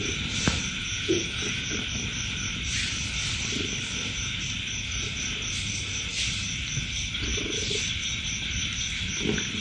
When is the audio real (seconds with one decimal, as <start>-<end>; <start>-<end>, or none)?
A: 0.0-0.8; 1.7-9.6